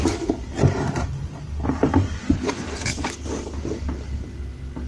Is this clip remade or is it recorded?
recorded